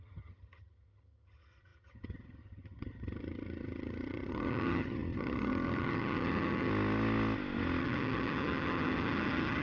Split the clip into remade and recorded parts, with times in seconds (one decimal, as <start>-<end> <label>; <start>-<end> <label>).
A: 0.0-6.7 remade; 6.7-7.8 recorded; 7.8-9.6 remade

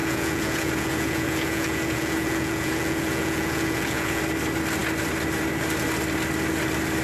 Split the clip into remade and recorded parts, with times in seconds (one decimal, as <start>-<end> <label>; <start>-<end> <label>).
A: 0.0-4.2 remade; 4.2-7.0 recorded